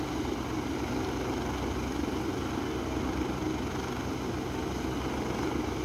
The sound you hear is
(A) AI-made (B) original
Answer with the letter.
B